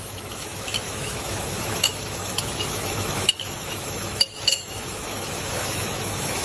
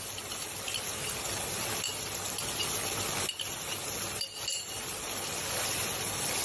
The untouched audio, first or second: second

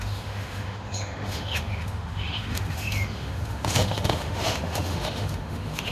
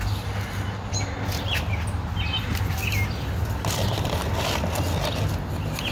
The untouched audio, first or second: second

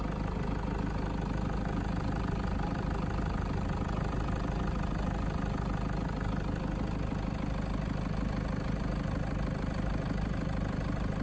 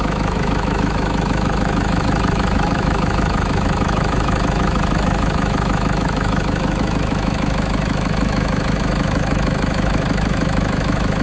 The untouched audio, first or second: first